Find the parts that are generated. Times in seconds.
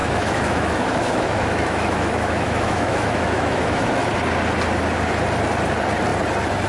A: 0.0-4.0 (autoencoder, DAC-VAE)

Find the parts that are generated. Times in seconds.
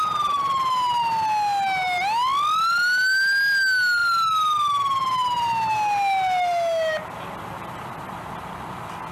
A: none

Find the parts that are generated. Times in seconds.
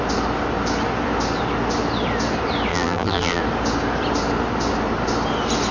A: 2.7-3.4 (vocoder, BigVGAN v2)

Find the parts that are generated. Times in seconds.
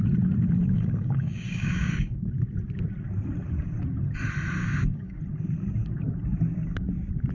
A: 0.6-2.3 (codec, DAC); 4.6-5.2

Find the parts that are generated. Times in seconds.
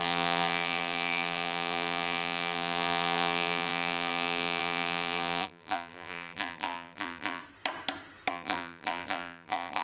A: 0.0-7.4 (vocoder, BigVGAN v2); 8.3-9.8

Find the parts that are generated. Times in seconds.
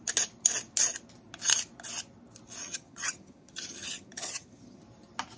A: 2.6-4.8 (vocoder, HiFi-GAN)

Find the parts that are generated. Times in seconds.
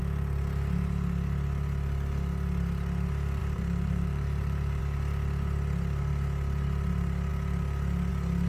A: 3.4-4.8 (vocoder, BigVGAN v2)